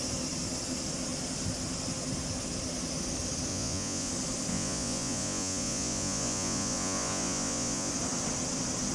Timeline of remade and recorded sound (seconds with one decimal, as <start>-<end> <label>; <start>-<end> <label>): 0.0-3.5 recorded; 3.5-4.1 remade; 4.1-4.5 recorded; 4.5-7.9 remade; 7.9-8.9 recorded